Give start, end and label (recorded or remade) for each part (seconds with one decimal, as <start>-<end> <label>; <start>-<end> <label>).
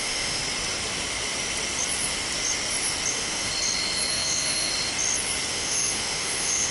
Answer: 0.0-0.4 remade; 0.4-3.1 recorded; 3.1-3.5 remade; 3.5-4.1 recorded; 4.1-4.7 remade; 4.7-5.5 recorded; 5.5-6.7 remade